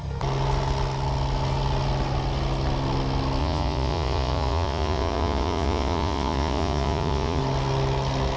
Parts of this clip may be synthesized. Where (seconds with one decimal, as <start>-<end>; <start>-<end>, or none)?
3.4-7.4

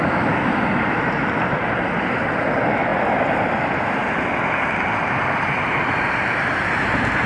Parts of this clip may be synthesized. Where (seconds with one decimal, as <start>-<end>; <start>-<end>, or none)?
none

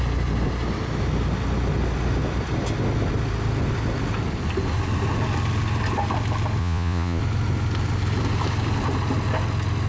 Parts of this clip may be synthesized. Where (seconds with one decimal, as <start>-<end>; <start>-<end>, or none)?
6.6-7.2

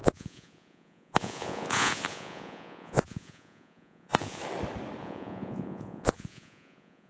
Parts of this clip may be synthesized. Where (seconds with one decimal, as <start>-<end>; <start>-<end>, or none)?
0.0-4.4; 5.0-7.1

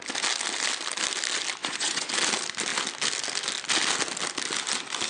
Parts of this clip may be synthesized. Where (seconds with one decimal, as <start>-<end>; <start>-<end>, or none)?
1.6-2.1

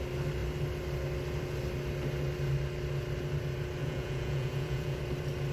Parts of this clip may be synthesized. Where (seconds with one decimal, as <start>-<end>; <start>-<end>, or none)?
3.8-5.0

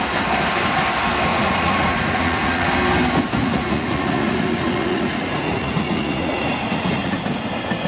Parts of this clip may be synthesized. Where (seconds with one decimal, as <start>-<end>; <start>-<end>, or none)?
1.3-2.7; 3.4-7.2

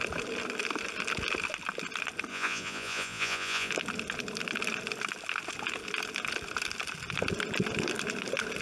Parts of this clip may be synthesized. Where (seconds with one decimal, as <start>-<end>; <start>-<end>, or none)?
2.3-3.7